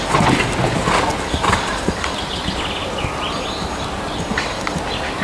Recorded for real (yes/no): yes